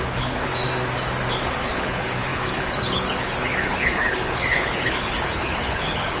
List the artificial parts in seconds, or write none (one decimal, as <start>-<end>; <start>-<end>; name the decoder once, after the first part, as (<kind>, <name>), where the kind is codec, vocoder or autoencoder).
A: 0.0-0.5 (codec, HILCodec); 1.3-6.2